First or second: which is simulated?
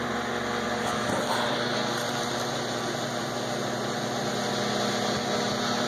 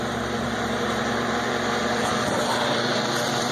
second